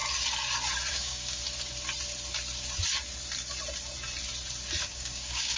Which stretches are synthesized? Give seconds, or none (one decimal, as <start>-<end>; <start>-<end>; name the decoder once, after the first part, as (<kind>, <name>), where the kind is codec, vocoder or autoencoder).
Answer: 0.9-1.4 (codec, DAC); 4.8-5.6